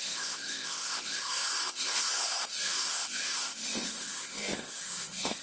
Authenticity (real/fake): fake